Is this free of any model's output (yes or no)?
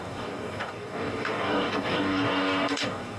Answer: no